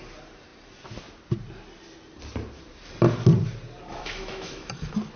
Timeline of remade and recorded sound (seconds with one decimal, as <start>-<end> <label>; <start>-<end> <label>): 0.0-3.9 recorded; 3.9-4.7 remade; 4.7-5.2 recorded

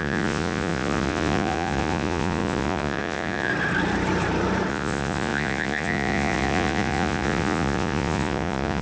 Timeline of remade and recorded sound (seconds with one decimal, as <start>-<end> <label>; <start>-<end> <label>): 0.0-3.5 remade; 3.5-4.7 recorded; 4.7-8.8 remade

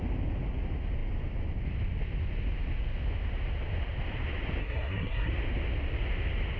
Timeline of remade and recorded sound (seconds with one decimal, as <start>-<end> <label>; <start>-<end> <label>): 0.0-4.6 recorded; 4.6-5.3 remade; 5.3-6.6 recorded